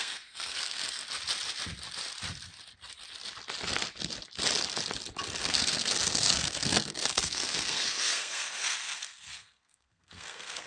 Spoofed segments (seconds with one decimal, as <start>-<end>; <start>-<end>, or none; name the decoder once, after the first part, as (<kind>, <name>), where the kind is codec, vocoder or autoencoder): 0.0-1.0 (codec, SNAC); 5.4-10.7